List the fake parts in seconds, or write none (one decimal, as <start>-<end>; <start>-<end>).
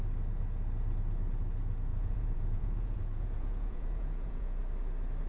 1.9-4.6